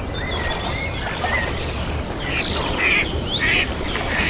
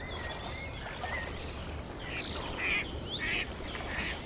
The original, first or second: second